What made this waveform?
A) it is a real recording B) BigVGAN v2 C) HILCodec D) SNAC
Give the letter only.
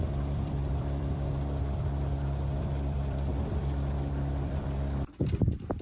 B